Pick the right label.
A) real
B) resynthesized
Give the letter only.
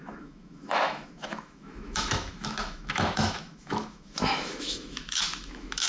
B